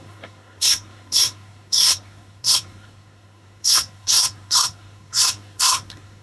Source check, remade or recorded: remade